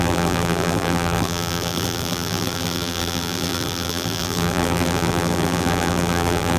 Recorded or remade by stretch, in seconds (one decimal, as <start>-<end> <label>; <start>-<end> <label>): 0.0-6.6 remade